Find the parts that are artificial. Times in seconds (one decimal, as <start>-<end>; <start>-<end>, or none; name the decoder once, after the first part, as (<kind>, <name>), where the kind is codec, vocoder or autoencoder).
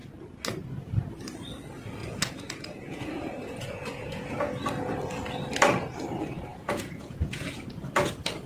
2.0-4.3 (vocoder, Vocos); 6.5-7.7